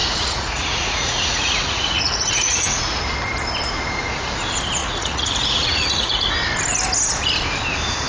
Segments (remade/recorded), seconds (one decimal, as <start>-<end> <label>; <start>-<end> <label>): 0.0-3.0 remade; 3.0-4.8 recorded; 4.8-6.3 remade; 6.3-8.1 recorded